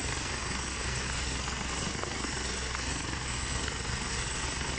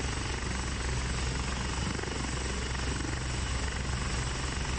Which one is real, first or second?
second